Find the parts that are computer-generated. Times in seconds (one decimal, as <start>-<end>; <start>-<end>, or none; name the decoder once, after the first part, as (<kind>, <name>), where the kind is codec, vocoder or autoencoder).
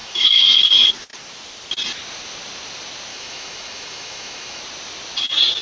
0.0-0.6 (autoencoder, DAC-VAE); 3.1-4.6